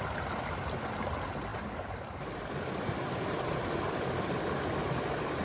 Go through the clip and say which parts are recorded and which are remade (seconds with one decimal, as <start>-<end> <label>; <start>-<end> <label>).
0.0-1.5 recorded; 1.5-4.7 remade; 4.7-5.4 recorded